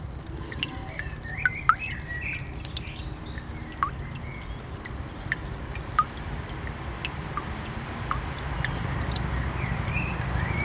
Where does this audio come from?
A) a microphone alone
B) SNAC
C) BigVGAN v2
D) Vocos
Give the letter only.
A